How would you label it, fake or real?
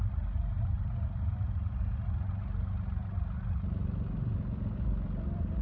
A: real